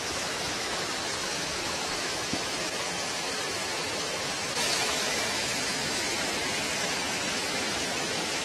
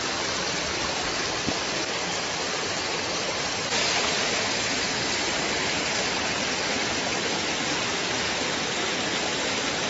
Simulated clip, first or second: first